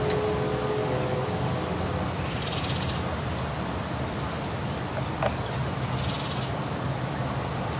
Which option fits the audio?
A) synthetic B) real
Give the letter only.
B